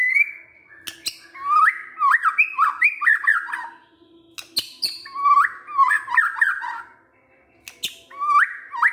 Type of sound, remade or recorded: recorded